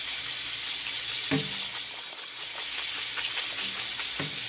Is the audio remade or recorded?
recorded